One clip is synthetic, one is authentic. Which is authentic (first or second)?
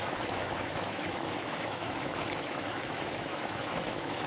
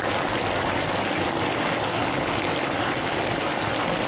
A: second